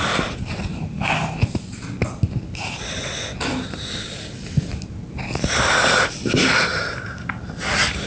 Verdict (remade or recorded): recorded